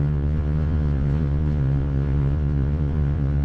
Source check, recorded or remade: remade